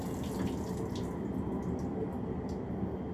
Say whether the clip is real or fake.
real